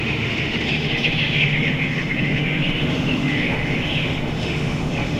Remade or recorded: remade